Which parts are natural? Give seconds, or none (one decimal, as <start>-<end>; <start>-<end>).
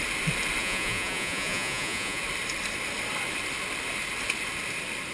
0.0-0.6; 2.2-5.1